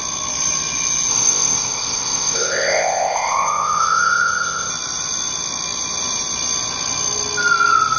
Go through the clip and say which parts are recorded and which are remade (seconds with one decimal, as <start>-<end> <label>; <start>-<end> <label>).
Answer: 0.0-1.1 recorded; 1.1-4.7 remade; 4.7-8.0 recorded